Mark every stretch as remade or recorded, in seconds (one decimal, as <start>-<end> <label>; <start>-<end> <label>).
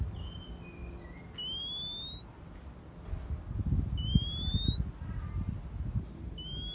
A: 0.0-6.7 recorded